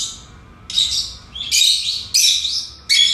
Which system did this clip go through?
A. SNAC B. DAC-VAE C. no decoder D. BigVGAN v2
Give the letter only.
C